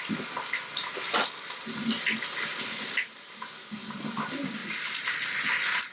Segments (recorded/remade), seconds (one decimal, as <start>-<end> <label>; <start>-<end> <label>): 0.0-4.6 recorded; 4.6-5.3 remade; 5.3-5.9 recorded

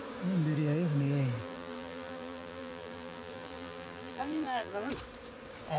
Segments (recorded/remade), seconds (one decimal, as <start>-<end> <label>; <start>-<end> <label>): 0.0-1.4 recorded; 1.4-4.9 remade; 4.9-5.8 recorded

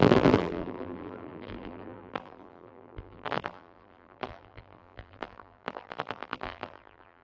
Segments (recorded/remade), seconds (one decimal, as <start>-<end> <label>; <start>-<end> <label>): 0.0-7.2 remade

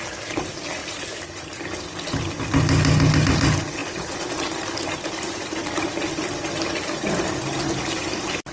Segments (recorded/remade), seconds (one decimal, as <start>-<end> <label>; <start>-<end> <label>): 0.0-0.8 recorded; 0.8-1.9 remade; 1.9-8.5 recorded